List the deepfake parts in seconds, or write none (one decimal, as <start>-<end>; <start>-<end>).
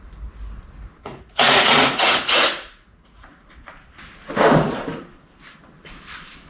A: 1.0-3.5